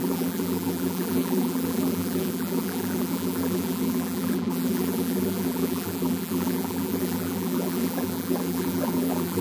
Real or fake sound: fake